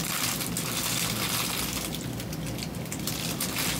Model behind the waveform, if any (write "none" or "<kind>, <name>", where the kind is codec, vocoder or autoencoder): none